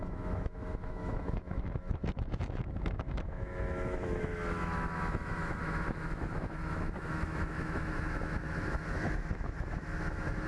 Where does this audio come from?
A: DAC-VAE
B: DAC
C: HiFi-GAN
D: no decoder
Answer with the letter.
A